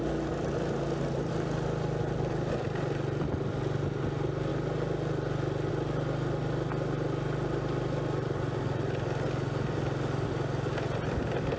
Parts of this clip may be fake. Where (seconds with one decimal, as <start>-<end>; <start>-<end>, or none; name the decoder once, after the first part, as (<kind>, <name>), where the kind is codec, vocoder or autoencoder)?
none